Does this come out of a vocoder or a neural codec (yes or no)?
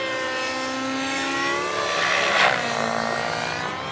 no